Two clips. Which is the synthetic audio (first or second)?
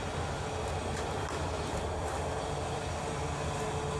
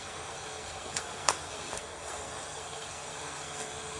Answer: second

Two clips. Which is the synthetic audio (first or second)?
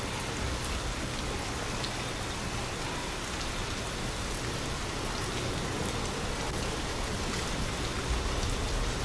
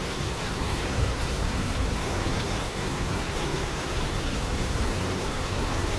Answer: second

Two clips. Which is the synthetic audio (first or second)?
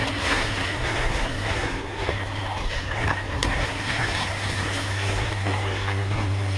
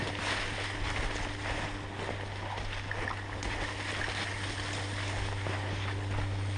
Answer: first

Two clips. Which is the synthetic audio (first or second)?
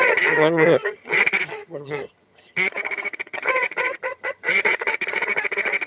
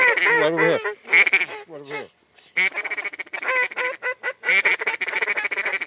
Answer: first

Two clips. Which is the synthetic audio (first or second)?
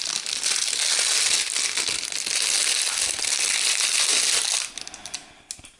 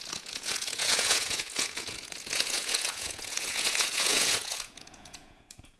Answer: second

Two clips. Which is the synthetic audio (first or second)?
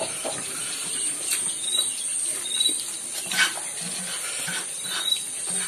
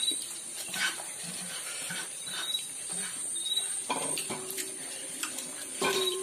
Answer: second